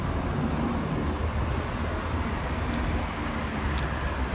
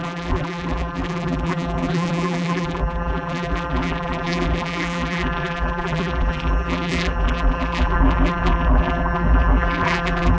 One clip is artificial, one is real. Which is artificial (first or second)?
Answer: second